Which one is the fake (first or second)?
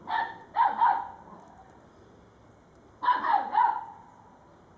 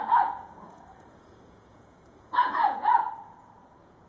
second